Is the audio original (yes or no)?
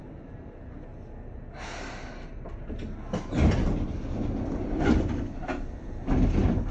yes